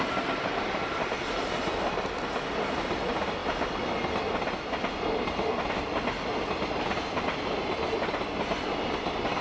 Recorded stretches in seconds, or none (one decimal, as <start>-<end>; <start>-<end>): 0.0-9.4